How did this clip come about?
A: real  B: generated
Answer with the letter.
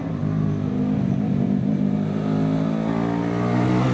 A